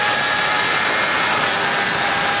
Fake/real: real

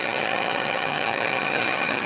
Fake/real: fake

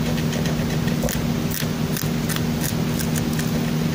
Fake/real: real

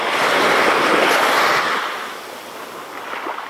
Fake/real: real